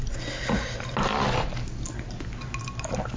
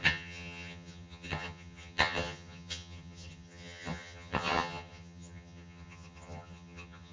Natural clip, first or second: first